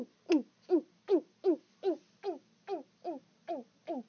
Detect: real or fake real